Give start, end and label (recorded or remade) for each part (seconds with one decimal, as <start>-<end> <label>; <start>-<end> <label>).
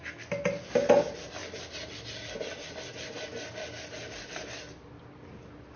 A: 0.0-5.8 recorded